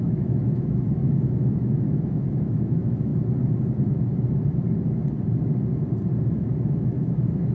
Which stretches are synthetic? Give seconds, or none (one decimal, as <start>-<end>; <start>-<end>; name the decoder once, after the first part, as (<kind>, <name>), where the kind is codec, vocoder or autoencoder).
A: 0.0-3.1 (autoencoder, DAC-VAE); 6.3-7.5